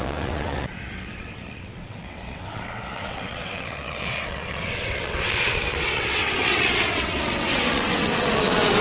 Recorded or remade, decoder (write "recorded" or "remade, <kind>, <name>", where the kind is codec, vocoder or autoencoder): remade, vocoder, WaveNeXt